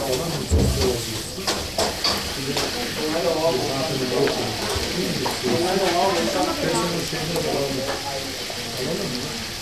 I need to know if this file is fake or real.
real